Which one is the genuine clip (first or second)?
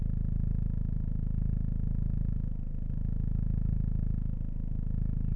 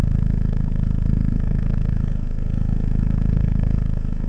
first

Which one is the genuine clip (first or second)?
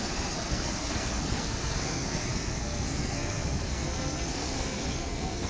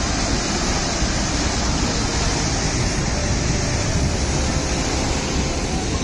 second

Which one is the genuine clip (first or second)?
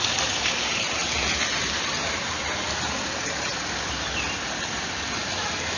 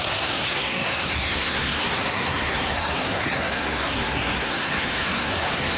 first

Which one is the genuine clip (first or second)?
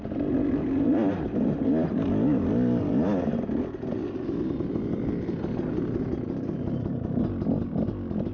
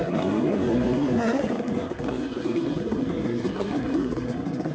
first